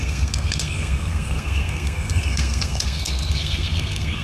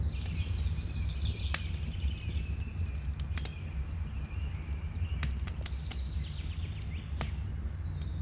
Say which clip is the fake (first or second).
first